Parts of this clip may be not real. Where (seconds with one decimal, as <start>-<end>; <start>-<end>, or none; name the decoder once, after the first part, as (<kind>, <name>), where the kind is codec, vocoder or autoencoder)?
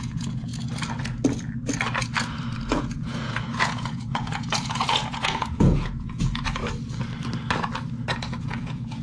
0.0-0.5 (vocoder, Vocos); 2.7-6.6; 8.4-9.0